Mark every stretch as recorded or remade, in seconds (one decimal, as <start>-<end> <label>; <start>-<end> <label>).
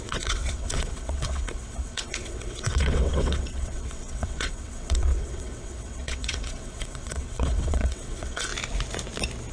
0.0-8.5 remade; 8.5-9.5 recorded